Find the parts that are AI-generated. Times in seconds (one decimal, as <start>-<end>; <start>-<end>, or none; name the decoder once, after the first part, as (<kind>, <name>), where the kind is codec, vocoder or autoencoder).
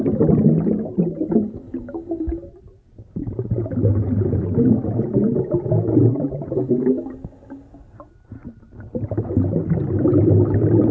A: 0.9-1.8 (vocoder, BigVGAN v2); 5.9-6.5